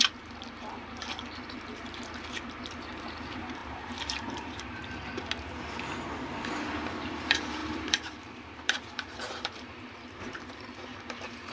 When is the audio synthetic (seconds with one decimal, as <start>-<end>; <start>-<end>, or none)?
0.0-4.8; 6.3-11.5

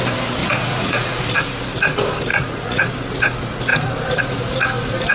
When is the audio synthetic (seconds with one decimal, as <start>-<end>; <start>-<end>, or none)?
0.4-1.2; 2.3-2.9